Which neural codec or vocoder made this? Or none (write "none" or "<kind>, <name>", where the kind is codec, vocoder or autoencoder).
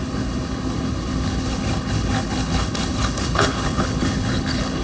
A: codec, HILCodec